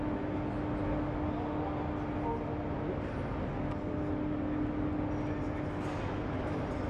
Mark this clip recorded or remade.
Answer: recorded